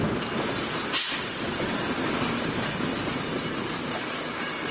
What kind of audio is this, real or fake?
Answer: real